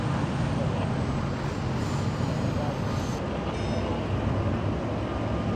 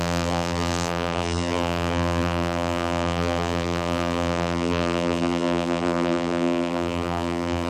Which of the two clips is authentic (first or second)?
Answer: first